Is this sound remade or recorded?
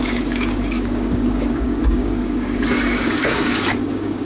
remade